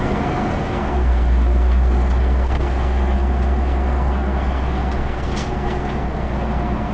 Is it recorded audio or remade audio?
remade